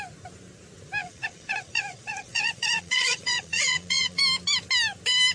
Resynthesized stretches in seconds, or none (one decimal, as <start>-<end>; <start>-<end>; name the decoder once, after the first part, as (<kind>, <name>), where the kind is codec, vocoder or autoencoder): 1.0-4.2 (vocoder, Vocos)